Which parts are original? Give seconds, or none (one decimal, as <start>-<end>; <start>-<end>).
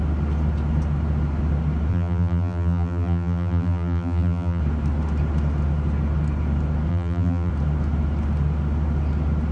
0.0-1.9; 4.6-6.9; 7.5-9.5